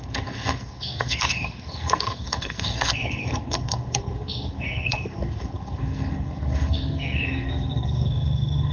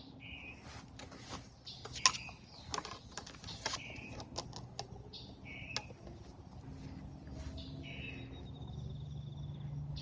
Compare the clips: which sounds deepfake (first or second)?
first